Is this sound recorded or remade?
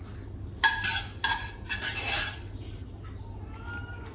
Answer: recorded